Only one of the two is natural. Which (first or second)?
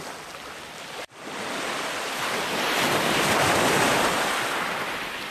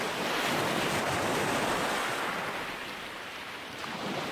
second